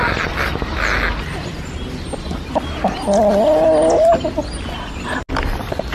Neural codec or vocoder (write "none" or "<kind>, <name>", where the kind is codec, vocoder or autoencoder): none